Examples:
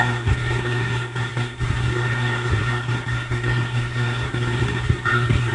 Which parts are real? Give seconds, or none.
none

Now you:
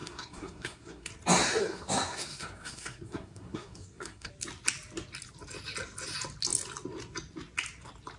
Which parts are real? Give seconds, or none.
1.1-1.6; 4.3-8.2

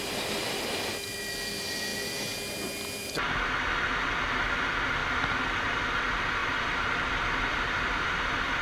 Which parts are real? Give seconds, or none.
0.0-5.0; 5.9-6.4; 8.2-8.6

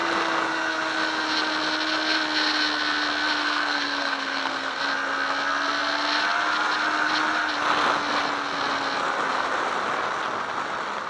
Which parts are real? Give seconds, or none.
0.0-3.4; 4.8-11.1